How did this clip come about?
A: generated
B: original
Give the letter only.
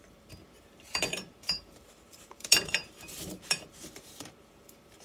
A